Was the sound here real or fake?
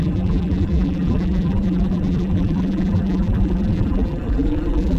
fake